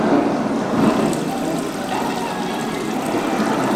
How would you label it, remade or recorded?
recorded